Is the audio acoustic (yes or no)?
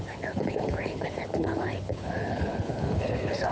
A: no